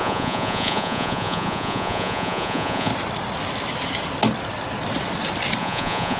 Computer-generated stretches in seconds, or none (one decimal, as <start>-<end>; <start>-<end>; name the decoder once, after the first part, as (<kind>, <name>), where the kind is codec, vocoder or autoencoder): 0.0-2.9 (vocoder, Vocos); 5.6-6.2